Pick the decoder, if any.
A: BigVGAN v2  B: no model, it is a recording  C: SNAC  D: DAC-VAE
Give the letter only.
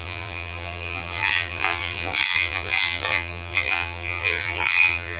A